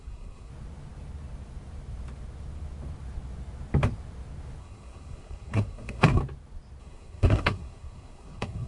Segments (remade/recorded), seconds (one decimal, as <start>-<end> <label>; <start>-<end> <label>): 0.0-0.5 remade; 0.5-4.6 recorded; 4.6-6.2 remade; 6.2-6.8 recorded; 6.8-8.7 remade

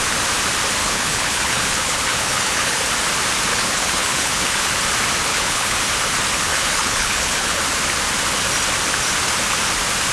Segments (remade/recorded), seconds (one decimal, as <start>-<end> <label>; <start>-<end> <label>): 0.0-0.8 recorded; 0.8-2.8 remade; 2.8-3.5 recorded; 3.5-4.7 remade; 4.7-5.3 recorded; 5.3-5.8 remade; 5.8-6.4 recorded; 6.4-7.6 remade; 7.6-10.1 recorded

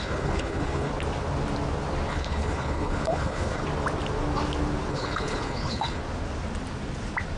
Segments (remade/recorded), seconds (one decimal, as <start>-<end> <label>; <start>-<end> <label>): 0.0-0.9 remade; 0.9-2.1 recorded; 2.1-3.6 remade; 3.6-4.9 recorded; 4.9-6.0 remade; 6.0-7.4 recorded